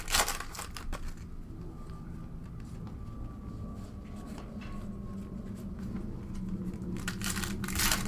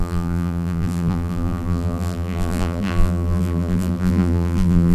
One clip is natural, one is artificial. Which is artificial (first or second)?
second